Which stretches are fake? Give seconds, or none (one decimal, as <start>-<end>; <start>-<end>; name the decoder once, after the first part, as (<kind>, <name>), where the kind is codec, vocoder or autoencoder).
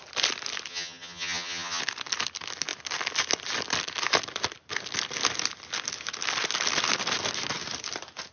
0.7-1.8 (vocoder, HiFi-GAN)